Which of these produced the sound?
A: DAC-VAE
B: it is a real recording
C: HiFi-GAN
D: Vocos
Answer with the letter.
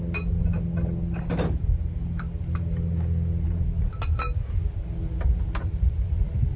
B